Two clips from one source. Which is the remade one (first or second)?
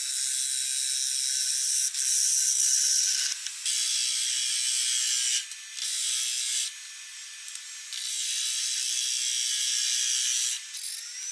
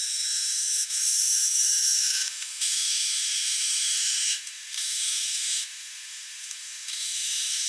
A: second